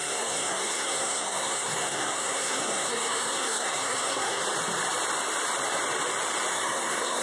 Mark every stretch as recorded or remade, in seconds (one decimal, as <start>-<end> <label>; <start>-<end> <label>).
0.0-4.4 remade; 4.4-6.5 recorded; 6.5-7.2 remade